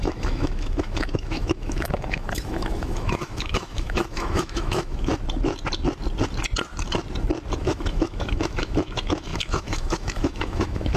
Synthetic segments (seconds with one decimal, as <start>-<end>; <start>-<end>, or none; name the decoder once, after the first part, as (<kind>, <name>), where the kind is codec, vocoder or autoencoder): 0.0-5.1 (autoencoder, DAC-VAE); 7.6-11.0